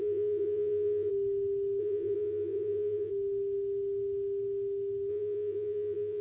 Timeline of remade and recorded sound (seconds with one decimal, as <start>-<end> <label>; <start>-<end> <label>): 0.0-1.1 remade; 1.1-1.8 recorded; 1.8-3.1 remade; 3.1-5.1 recorded; 5.1-6.2 remade

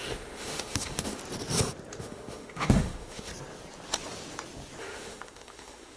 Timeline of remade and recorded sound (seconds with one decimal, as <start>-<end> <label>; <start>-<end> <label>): 0.0-1.2 remade; 1.2-2.0 recorded; 2.0-3.3 remade; 3.3-4.8 recorded; 4.8-6.0 remade

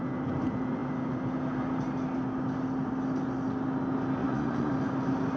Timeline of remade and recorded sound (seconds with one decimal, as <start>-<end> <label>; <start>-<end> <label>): 0.0-4.2 recorded; 4.2-4.7 remade; 4.7-5.4 recorded

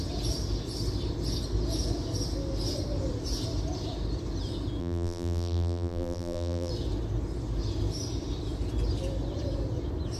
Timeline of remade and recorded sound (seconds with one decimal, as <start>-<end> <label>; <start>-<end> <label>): 0.0-4.8 recorded; 4.8-6.7 remade; 6.7-10.2 recorded

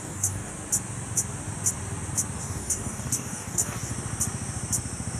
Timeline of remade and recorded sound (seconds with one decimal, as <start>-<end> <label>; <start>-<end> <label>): 0.0-0.5 remade; 0.5-2.4 recorded; 2.4-3.9 remade; 3.9-5.2 recorded

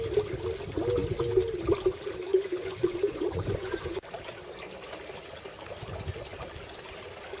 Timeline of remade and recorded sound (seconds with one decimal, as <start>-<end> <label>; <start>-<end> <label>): 0.0-2.3 recorded; 2.3-4.0 remade; 4.0-7.4 recorded

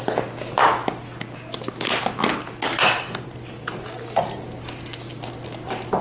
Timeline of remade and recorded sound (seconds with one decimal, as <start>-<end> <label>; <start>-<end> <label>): 0.0-6.0 recorded

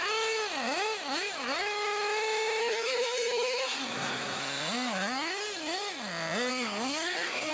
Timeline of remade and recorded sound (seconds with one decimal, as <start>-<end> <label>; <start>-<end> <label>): 0.0-2.6 recorded; 2.6-4.4 remade; 4.4-6.5 recorded; 6.5-7.5 remade